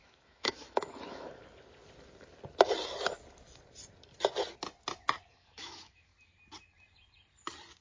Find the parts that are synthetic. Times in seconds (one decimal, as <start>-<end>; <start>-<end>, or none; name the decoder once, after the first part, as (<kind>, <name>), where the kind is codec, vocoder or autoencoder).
0.0-1.4 (autoencoder, DAC-VAE); 5.3-6.1